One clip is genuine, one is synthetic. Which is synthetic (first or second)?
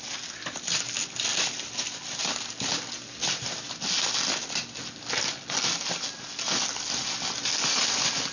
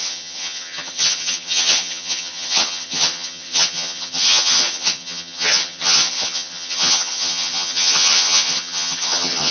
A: second